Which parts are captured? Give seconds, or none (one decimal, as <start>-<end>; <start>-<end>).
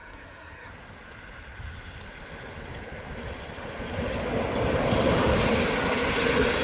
0.7-6.6